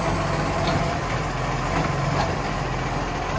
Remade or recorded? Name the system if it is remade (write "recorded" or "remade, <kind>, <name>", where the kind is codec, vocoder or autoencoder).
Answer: recorded